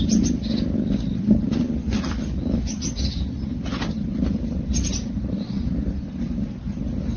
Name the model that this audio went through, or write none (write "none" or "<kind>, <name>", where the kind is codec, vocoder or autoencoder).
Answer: none